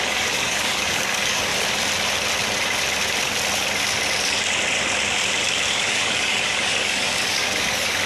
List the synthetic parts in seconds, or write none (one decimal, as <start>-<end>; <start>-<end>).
0.0-1.5; 5.7-8.1